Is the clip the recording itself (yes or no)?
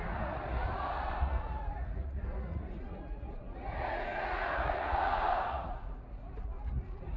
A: no